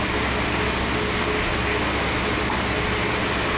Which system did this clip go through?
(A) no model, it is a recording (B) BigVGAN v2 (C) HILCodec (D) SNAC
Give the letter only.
A